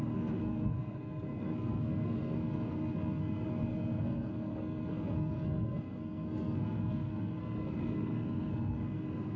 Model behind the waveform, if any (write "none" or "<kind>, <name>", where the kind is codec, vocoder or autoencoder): codec, SNAC